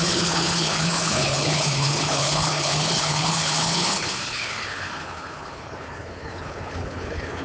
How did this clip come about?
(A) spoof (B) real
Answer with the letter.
A